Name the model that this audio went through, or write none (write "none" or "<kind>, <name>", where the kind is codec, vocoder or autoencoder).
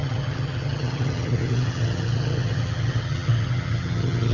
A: vocoder, HiFi-GAN